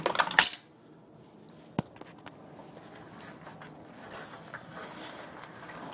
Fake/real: real